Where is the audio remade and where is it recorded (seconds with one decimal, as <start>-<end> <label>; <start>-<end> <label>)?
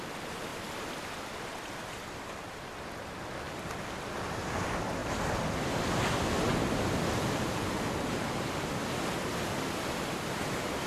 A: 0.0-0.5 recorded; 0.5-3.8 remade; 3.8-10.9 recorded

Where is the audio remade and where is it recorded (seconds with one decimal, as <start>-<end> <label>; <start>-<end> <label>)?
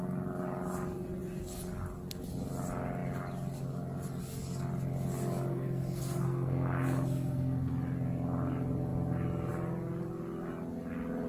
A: 0.0-5.5 recorded; 5.5-7.7 remade; 7.7-11.3 recorded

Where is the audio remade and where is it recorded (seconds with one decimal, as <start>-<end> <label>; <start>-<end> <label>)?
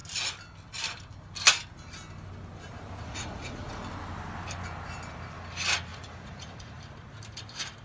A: 0.0-3.0 recorded; 3.0-3.8 remade; 3.8-5.9 recorded; 5.9-6.8 remade; 6.8-7.8 recorded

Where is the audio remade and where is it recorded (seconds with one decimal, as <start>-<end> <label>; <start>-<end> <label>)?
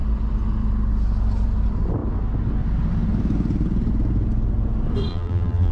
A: 0.0-5.1 recorded; 5.1-5.7 remade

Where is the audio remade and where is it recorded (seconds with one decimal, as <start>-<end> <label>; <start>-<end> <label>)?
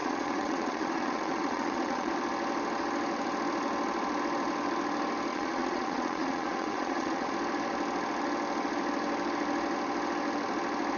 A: 0.0-2.1 remade; 2.1-5.3 recorded; 5.3-7.3 remade; 7.3-11.0 recorded